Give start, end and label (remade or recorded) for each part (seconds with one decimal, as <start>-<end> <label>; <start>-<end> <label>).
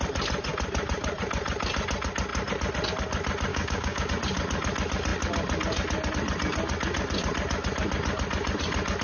0.0-3.5 recorded; 3.5-4.1 remade; 4.1-9.0 recorded